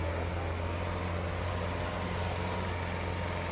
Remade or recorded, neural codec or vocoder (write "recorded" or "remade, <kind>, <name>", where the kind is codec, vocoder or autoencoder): recorded